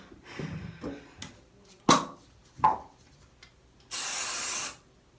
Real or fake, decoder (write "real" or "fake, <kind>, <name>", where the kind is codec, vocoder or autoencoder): real